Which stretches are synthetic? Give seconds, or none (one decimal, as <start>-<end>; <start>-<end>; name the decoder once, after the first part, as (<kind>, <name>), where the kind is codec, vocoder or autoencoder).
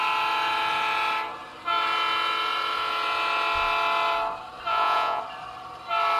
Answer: 4.7-5.2 (vocoder, Vocos)